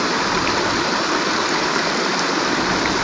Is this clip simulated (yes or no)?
no